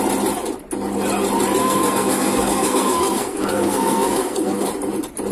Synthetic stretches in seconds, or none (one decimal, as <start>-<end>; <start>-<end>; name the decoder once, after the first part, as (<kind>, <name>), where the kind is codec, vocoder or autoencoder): 1.6-4.7 (codec, SNAC)